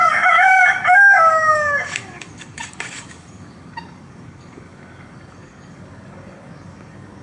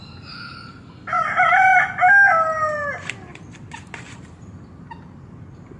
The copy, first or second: first